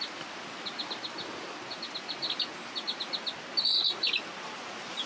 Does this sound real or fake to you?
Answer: real